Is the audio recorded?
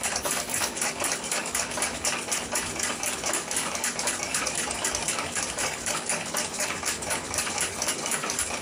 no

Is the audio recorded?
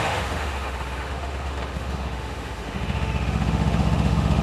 no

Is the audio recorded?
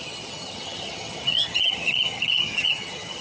no